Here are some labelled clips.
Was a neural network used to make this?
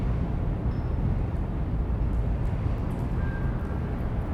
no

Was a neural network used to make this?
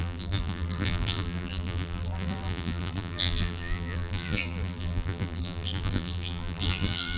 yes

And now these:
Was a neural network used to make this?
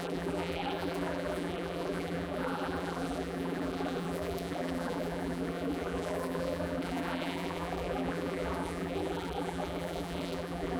yes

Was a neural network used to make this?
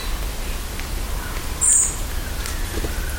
no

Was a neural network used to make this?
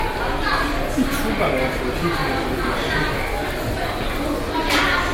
no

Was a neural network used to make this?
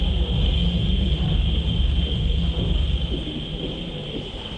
no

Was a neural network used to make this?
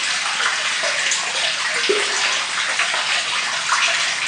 no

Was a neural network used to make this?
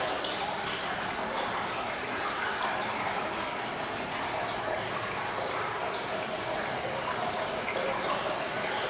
no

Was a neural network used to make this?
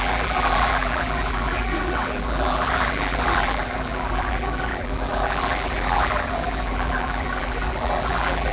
yes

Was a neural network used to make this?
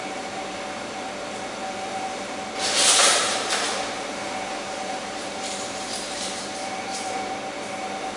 yes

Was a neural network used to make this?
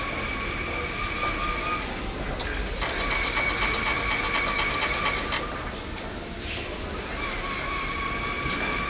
no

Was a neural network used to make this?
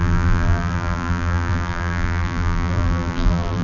yes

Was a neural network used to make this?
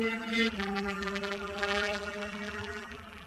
yes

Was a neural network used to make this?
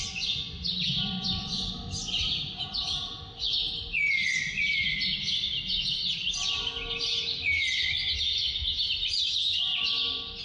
no